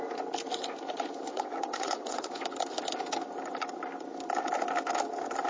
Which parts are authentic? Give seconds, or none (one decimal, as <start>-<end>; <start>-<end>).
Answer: 0.0-1.3; 2.3-5.5